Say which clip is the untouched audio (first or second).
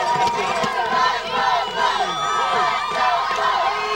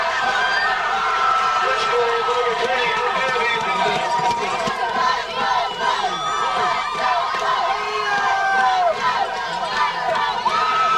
first